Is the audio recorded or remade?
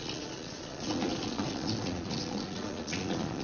remade